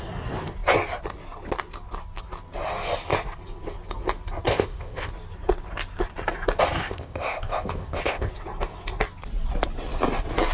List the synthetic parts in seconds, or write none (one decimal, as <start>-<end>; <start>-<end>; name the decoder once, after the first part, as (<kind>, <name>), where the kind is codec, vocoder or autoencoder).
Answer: 4.5-5.1 (codec, ZipCodec); 6.8-8.3